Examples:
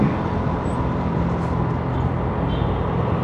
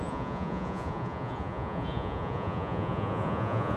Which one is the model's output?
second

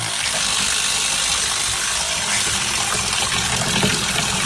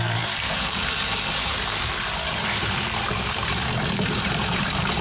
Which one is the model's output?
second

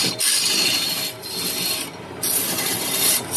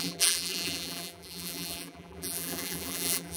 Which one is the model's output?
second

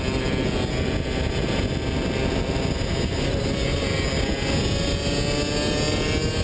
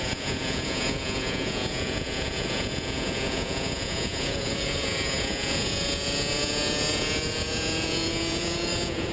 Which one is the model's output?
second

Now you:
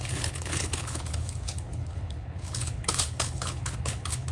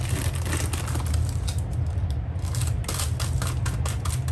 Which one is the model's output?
first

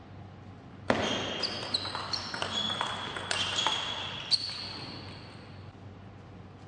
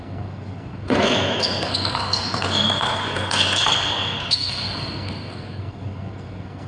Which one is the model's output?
second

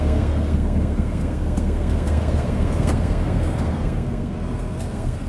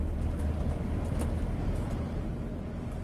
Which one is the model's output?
first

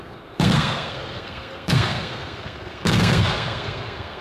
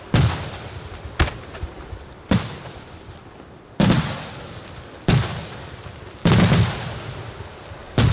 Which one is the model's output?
first